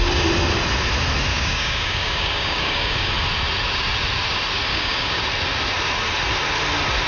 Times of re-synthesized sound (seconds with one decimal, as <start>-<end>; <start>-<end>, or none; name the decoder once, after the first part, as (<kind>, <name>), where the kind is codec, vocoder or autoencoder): 1.3-3.1 (codec, DAC); 4.7-5.2